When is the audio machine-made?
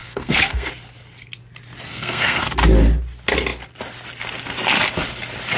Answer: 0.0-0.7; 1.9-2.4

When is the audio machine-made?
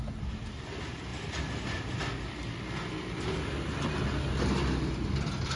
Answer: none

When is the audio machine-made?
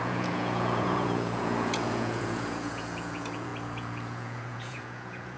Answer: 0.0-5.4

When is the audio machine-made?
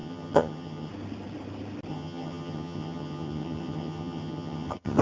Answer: 0.0-0.9; 1.9-5.0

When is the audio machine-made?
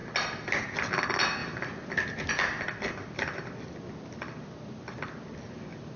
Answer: none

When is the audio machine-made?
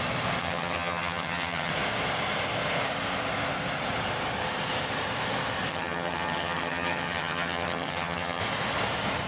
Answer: 0.4-1.7; 5.7-8.4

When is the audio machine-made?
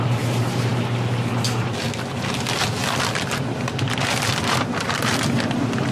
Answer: none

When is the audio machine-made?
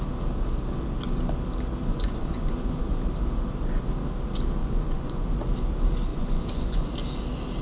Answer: 1.9-2.8; 4.6-5.4; 6.1-6.9